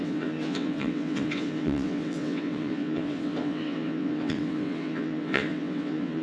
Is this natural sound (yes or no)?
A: no